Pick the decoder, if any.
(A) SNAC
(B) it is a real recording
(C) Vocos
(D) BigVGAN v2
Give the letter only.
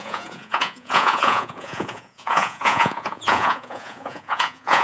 C